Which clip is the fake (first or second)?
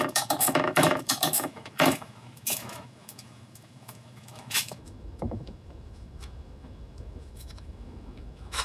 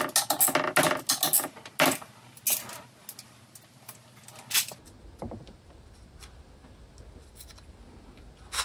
first